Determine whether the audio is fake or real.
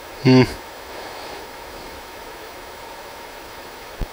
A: fake